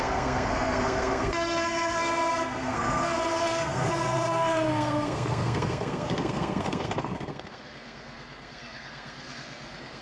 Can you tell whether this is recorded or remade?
remade